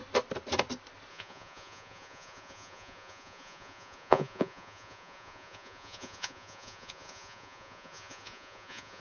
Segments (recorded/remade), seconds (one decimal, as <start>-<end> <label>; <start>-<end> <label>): 0.0-1.1 recorded; 1.1-9.0 remade